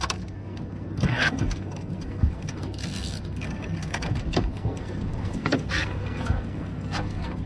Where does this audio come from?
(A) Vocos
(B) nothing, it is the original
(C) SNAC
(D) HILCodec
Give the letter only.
C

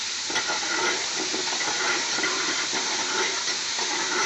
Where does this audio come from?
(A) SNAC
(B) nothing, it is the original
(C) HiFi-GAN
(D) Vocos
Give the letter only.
B